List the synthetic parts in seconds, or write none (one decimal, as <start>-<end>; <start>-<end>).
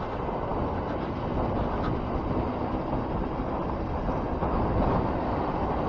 none